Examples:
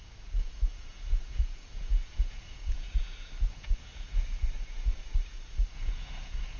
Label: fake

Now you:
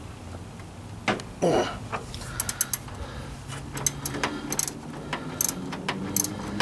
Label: real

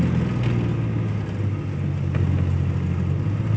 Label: real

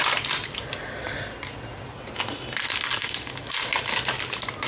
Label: real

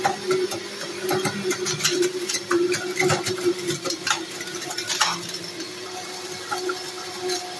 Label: real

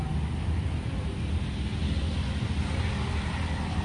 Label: real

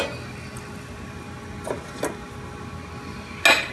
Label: real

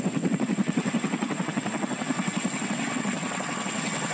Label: fake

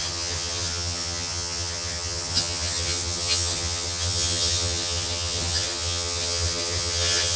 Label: fake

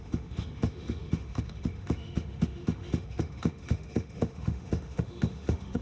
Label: fake